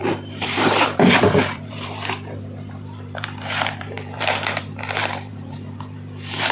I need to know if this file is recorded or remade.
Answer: remade